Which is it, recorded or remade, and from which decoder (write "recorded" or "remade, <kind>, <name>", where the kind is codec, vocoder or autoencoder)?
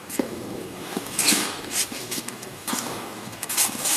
remade, codec, DAC